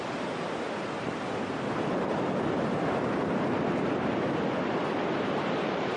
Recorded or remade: recorded